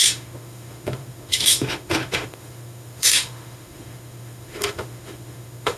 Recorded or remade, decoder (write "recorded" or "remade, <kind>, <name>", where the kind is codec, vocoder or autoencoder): remade, autoencoder, DAC-VAE